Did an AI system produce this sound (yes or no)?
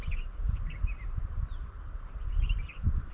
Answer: yes